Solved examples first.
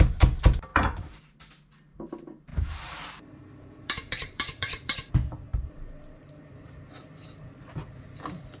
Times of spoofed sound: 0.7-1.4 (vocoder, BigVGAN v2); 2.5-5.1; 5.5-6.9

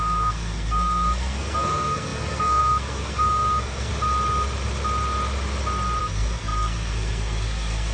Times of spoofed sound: 0.0-3.9 (codec, SNAC); 6.0-7.9

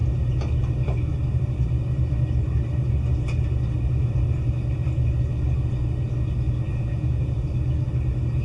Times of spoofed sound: 6.7-7.4 (vocoder, Vocos)

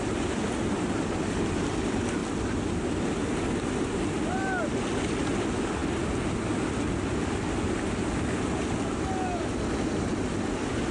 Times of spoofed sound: none

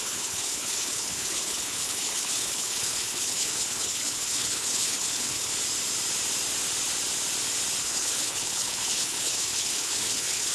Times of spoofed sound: 0.0-5.5 (codec, HILCodec); 7.8-10.5